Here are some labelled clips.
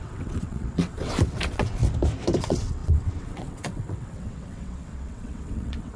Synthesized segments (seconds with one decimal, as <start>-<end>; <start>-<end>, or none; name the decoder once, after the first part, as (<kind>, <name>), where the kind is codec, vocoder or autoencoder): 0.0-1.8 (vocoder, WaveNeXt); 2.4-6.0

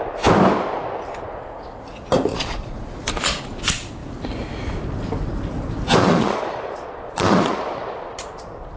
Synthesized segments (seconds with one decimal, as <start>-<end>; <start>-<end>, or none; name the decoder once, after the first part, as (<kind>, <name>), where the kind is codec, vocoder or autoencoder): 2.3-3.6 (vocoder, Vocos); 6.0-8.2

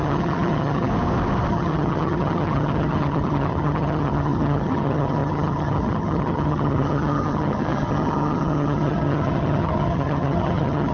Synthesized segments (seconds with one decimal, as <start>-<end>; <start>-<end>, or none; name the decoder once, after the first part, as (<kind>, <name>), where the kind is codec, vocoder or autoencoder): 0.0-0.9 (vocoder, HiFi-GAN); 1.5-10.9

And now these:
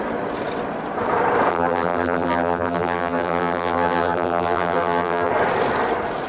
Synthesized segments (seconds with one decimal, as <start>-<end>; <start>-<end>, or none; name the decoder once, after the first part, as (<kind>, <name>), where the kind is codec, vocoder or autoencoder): 1.5-5.3 (vocoder, BigVGAN v2)